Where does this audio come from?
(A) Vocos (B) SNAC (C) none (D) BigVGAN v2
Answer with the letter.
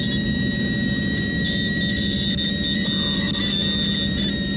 C